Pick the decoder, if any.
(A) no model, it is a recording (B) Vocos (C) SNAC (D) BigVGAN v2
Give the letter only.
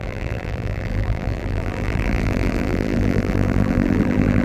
D